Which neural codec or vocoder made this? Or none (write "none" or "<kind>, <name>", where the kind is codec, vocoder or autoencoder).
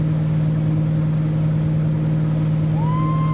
none